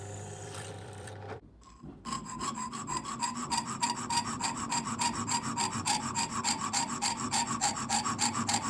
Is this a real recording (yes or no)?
no